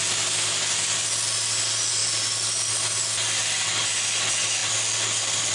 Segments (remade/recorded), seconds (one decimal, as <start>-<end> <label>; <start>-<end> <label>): 0.0-5.5 recorded

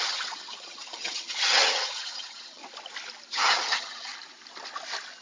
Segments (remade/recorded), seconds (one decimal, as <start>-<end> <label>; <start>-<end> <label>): 0.0-2.6 remade; 2.6-3.3 recorded; 3.3-4.1 remade; 4.1-5.2 recorded

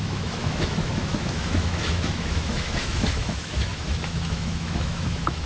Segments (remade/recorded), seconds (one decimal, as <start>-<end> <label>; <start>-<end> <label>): 0.0-5.5 remade

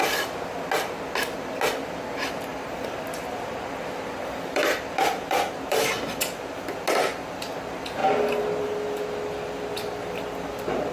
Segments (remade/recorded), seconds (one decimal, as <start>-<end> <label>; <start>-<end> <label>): 0.0-2.5 recorded; 2.5-6.6 remade; 6.6-8.0 recorded; 8.0-10.9 remade

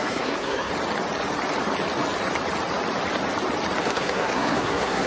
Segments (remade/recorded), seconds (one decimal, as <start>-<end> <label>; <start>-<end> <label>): 0.0-0.7 remade; 0.7-3.8 recorded; 3.8-5.1 remade

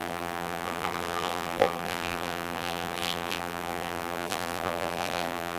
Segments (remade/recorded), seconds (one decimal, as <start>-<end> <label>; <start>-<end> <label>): 0.0-5.6 remade